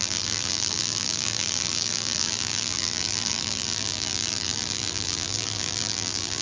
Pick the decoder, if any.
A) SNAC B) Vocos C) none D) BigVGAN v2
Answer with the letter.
D